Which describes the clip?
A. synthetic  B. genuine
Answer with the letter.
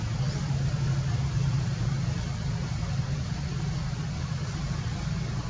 B